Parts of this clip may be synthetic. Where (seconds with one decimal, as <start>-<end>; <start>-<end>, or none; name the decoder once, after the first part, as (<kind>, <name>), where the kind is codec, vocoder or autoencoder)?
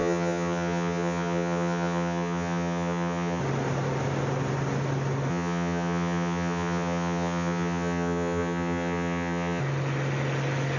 0.0-3.4 (vocoder, HiFi-GAN); 5.3-9.6